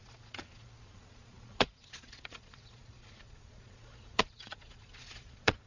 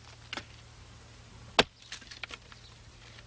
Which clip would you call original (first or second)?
second